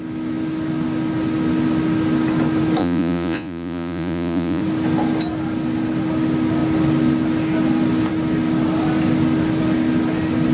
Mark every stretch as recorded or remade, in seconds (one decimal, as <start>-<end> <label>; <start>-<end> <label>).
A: 0.0-2.8 recorded; 2.8-4.6 remade; 4.6-10.5 recorded